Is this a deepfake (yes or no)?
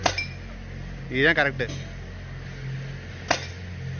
no